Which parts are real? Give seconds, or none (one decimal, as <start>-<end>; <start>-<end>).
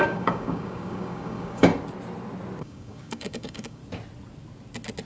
1.7-2.6; 3.8-5.1